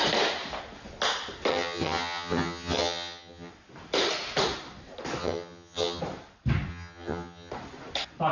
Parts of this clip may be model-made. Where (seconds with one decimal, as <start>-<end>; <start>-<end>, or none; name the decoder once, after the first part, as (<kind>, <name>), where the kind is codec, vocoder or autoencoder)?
1.5-3.5 (vocoder, HiFi-GAN); 5.2-6.0; 6.7-7.5